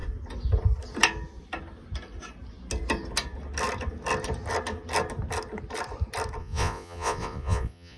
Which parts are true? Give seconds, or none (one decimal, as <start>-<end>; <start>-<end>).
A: 0.0-6.4